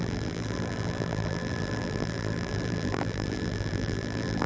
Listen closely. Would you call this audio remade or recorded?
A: remade